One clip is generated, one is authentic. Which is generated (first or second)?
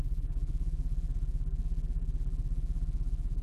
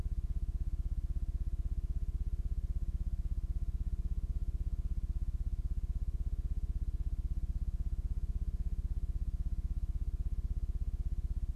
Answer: first